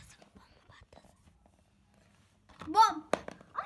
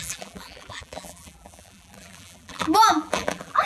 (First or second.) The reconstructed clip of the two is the second